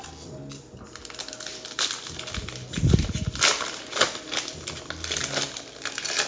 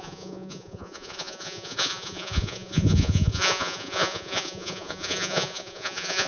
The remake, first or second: second